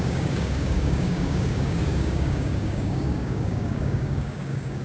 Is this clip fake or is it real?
fake